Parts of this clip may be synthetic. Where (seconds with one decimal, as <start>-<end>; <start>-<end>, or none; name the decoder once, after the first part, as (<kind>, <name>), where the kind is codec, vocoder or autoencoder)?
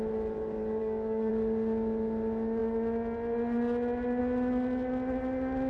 0.8-1.3 (codec, DAC)